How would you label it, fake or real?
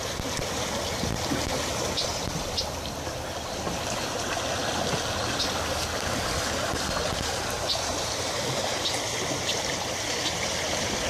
real